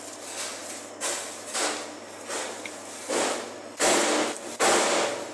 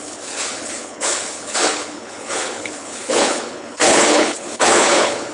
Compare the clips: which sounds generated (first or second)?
second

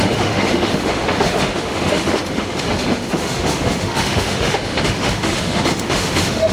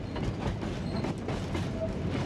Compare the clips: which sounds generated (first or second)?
first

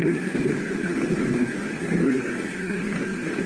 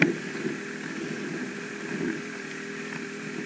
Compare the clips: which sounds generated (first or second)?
first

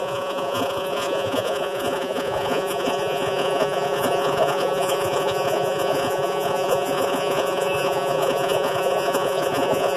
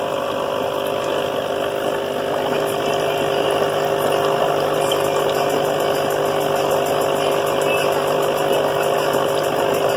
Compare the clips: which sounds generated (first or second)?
first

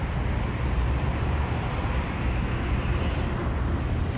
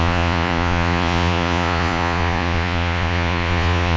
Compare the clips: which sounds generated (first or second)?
second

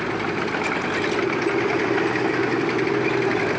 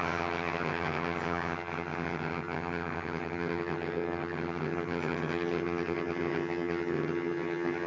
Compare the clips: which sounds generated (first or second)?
second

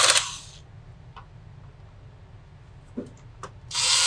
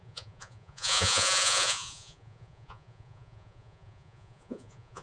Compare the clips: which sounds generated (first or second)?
second